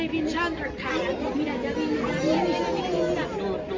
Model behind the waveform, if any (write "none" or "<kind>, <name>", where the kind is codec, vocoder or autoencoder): none